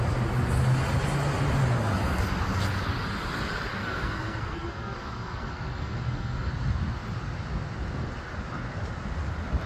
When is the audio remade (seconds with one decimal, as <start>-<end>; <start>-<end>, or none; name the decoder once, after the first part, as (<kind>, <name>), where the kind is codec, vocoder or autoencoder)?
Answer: 3.8-6.5 (codec, SNAC)